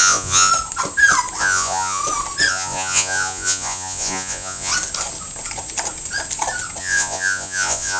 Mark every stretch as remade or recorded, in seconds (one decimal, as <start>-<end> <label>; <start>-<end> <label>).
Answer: 0.0-0.5 remade; 0.5-1.4 recorded; 1.4-2.0 remade; 2.0-2.5 recorded; 2.5-4.7 remade; 4.7-6.8 recorded; 6.8-8.0 remade